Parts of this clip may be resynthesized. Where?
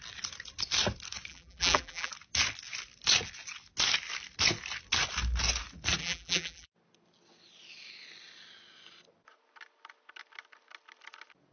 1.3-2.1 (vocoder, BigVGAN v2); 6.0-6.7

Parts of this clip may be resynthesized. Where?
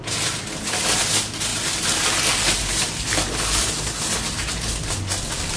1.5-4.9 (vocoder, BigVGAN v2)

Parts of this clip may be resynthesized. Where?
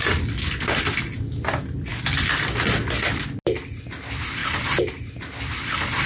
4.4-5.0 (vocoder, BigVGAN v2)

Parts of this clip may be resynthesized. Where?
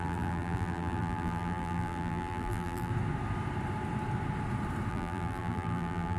0.0-2.9 (vocoder, BigVGAN v2); 4.9-6.2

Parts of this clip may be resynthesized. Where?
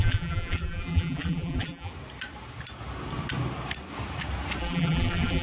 0.0-1.9 (vocoder, BigVGAN v2); 4.6-5.4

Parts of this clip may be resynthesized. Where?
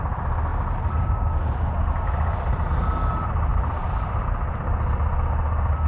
0.5-2.7 (vocoder, BigVGAN v2); 3.5-4.2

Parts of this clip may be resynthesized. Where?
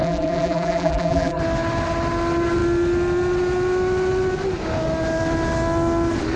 0.0-1.4 (vocoder, BigVGAN v2)